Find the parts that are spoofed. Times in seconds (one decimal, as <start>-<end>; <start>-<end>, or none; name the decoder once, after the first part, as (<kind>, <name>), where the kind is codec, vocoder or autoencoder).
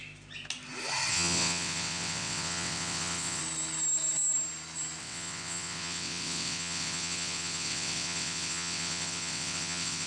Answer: 1.1-3.4 (vocoder, WaveNeXt); 5.0-10.1